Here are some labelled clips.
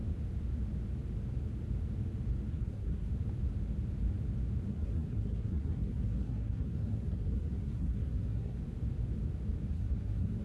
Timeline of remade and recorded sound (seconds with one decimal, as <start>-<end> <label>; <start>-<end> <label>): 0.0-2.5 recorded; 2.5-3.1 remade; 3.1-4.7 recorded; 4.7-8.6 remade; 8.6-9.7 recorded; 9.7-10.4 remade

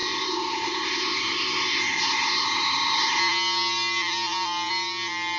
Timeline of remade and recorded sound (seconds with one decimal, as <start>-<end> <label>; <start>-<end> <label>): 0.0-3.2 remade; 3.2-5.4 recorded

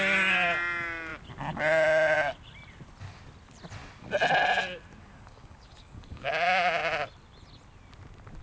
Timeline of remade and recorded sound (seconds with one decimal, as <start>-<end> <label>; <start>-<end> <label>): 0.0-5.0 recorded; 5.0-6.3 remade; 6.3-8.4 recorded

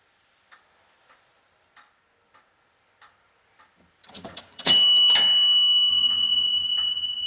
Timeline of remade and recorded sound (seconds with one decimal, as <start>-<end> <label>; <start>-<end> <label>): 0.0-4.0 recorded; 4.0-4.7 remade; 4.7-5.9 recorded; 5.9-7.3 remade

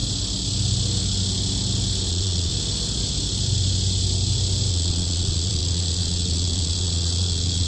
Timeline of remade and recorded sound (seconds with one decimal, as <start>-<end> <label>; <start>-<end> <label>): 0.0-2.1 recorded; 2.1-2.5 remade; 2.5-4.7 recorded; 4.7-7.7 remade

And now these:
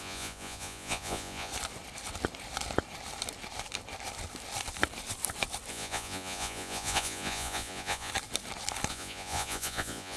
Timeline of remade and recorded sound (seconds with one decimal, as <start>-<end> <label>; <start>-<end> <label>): 0.0-1.5 remade; 1.5-5.7 recorded; 5.7-8.1 remade; 8.1-8.9 recorded; 8.9-10.2 remade